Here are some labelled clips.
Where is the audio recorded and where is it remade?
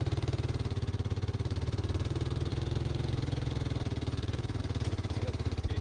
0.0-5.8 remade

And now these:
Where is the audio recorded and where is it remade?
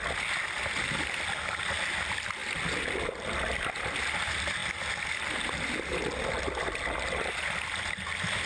0.0-8.5 recorded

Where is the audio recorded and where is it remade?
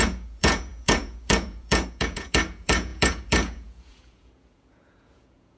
0.0-5.6 remade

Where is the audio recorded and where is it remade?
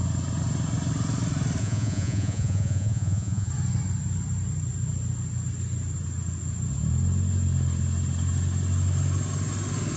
0.0-1.6 recorded; 1.6-3.5 remade; 3.5-10.0 recorded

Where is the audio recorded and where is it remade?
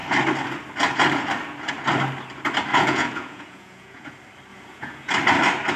0.0-2.7 recorded; 2.7-4.1 remade; 4.1-4.5 recorded; 4.5-5.1 remade; 5.1-5.8 recorded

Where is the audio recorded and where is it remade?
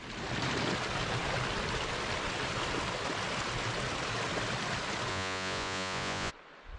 0.0-5.1 recorded; 5.1-6.3 remade; 6.3-6.8 recorded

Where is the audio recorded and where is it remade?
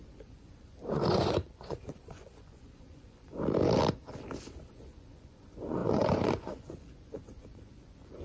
0.0-3.3 remade; 3.3-4.7 recorded; 4.7-8.2 remade